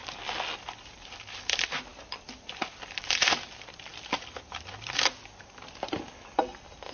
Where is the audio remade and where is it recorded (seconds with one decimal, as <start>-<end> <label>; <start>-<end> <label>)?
0.0-1.1 remade; 1.1-1.9 recorded; 1.9-3.0 remade; 3.0-6.9 recorded